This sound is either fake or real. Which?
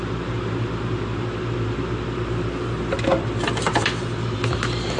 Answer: real